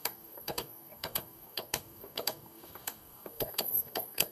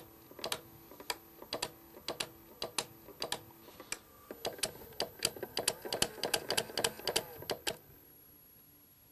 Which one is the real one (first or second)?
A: second